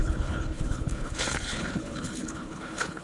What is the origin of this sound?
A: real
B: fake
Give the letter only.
B